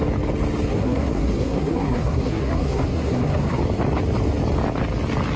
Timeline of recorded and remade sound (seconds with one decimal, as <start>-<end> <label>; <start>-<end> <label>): 0.0-0.7 recorded; 0.7-3.6 remade; 3.6-5.4 recorded